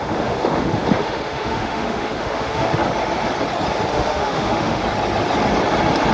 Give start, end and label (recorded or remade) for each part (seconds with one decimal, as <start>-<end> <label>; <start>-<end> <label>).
0.0-2.8 remade; 2.8-3.9 recorded; 3.9-4.8 remade; 4.8-6.1 recorded